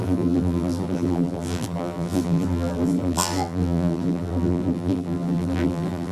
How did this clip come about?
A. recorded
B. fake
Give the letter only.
B